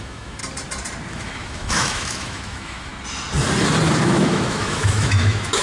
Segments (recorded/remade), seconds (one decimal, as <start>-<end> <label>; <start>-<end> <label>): 0.0-0.4 remade; 0.4-1.1 recorded; 1.1-2.9 remade; 2.9-4.0 recorded; 4.0-5.6 remade